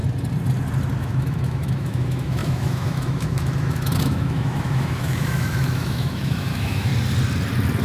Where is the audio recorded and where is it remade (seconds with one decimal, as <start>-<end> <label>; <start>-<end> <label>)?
0.0-1.0 recorded; 1.0-6.9 remade; 6.9-7.8 recorded